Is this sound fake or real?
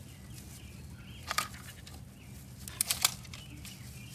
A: real